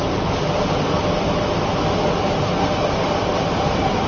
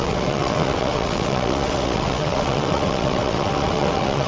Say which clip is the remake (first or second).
second